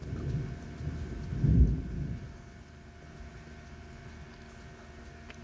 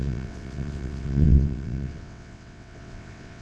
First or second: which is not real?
second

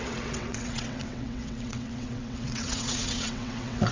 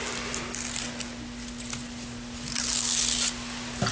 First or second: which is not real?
first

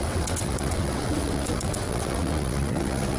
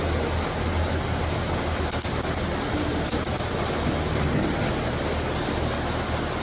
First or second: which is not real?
first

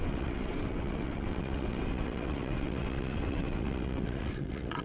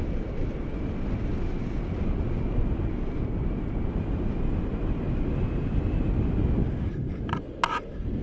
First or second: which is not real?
first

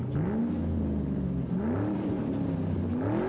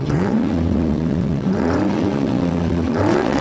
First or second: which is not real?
second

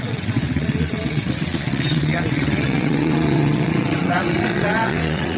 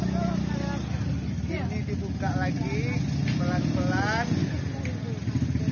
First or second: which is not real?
first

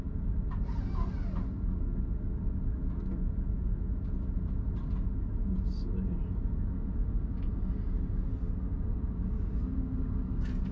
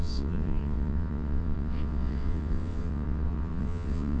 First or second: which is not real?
second